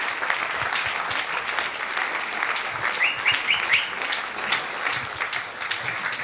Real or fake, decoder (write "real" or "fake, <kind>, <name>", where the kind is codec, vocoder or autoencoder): real